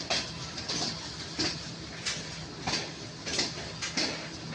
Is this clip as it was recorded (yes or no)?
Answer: yes